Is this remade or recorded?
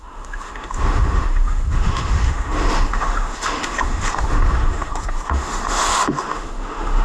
remade